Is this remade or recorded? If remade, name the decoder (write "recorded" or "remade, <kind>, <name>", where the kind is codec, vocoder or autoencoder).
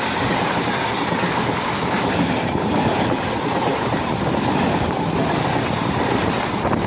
recorded